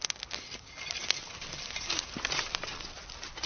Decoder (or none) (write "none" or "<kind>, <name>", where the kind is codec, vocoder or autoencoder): none